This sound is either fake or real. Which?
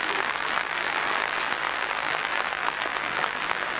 fake